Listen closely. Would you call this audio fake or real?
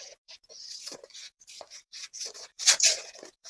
fake